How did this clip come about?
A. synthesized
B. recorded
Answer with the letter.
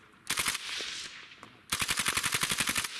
B